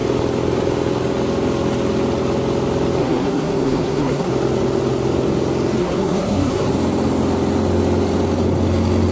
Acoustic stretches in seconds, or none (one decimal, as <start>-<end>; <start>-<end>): 0.0-3.0; 4.3-5.8; 6.7-9.1